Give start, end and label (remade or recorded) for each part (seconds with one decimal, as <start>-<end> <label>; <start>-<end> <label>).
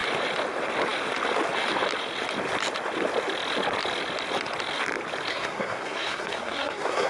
0.0-5.3 recorded; 5.3-7.1 remade